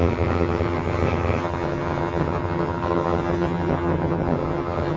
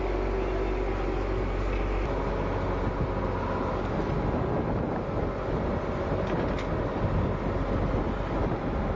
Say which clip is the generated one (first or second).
first